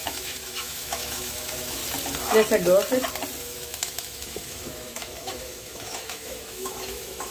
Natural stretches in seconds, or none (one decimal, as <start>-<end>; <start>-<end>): 1.8-3.4